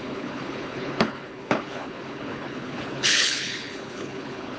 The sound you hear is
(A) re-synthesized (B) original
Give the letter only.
A